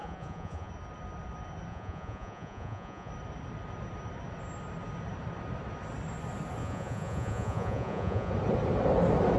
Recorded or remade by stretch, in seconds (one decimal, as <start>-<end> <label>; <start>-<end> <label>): 0.0-0.7 remade; 0.7-1.7 recorded; 1.7-3.1 remade; 3.1-6.6 recorded; 6.6-8.3 remade; 8.3-9.4 recorded